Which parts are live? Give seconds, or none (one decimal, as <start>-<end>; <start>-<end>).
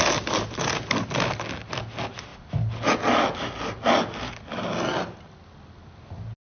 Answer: 0.0-6.5